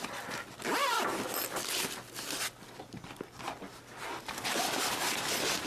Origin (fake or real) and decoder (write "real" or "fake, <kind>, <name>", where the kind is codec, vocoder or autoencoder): real